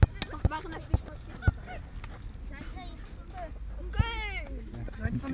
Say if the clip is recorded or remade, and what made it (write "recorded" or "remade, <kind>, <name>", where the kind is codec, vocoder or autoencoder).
recorded